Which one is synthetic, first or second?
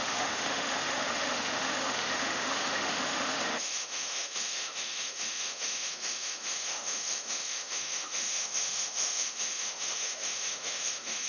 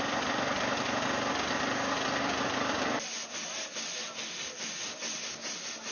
first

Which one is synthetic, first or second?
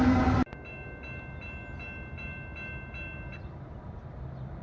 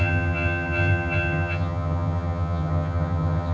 second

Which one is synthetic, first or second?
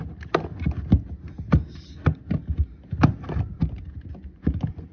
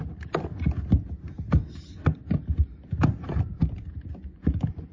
second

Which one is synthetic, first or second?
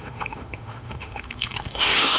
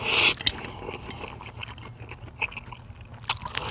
first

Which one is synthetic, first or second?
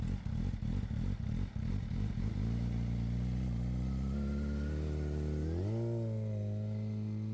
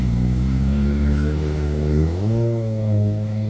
second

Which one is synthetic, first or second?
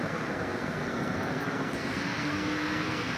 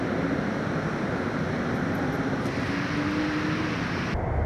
first